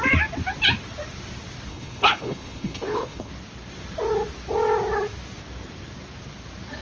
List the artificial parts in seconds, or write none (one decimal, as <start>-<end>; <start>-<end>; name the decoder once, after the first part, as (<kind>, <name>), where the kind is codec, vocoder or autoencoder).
1.7-3.3 (codec, HILCodec)